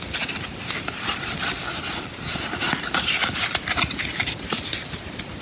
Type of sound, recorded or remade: recorded